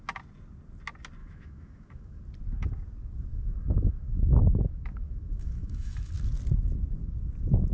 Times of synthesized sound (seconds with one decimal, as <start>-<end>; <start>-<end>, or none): 1.2-2.2; 3.3-6.1